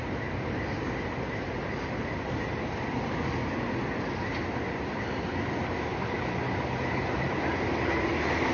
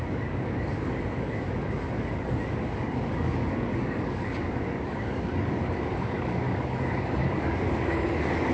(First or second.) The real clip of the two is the first